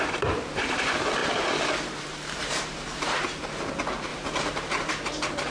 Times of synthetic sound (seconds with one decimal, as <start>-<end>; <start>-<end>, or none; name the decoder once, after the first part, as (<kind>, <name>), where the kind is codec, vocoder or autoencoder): 1.2-3.4 (vocoder, BigVGAN v2); 4.1-4.9